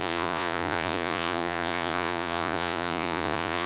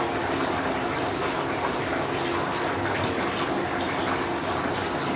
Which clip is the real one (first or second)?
second